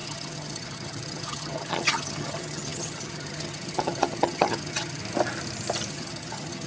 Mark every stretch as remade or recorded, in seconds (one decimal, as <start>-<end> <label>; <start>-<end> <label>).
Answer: 0.0-5.0 remade; 5.0-5.9 recorded; 5.9-6.7 remade